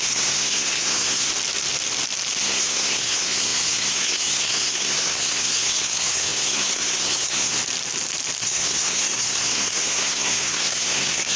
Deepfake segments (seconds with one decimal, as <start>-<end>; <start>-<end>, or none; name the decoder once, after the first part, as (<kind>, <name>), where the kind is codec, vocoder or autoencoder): 0.0-1.3 (codec, SNAC); 2.4-7.6; 8.4-11.4